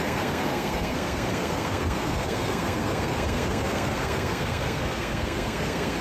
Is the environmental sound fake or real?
fake